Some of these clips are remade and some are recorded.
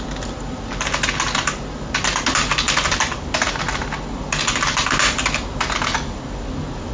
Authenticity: recorded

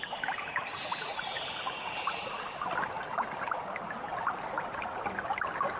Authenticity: recorded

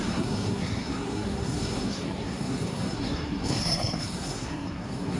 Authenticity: remade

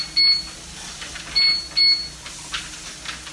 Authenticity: recorded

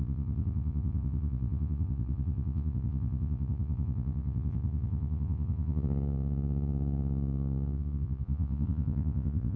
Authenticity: remade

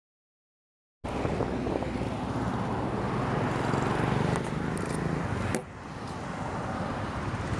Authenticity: recorded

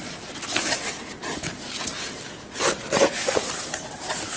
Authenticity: recorded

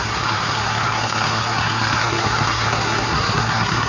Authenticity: remade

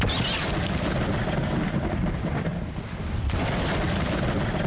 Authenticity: recorded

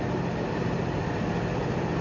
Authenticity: recorded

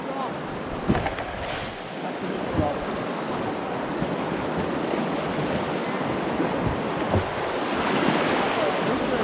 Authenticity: recorded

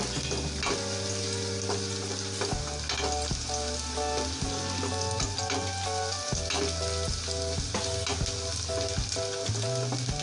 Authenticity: recorded